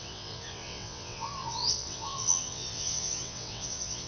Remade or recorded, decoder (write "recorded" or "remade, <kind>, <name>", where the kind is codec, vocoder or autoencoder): remade, vocoder, WaveNeXt